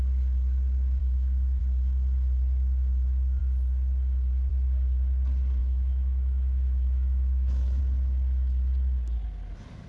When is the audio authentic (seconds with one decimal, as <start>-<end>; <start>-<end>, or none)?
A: 0.0-1.0; 1.6-5.6; 7.8-9.9